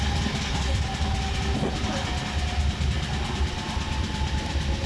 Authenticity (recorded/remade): recorded